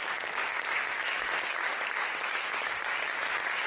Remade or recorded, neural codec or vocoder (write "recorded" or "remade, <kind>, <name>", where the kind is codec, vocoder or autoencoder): remade, autoencoder, DAC-VAE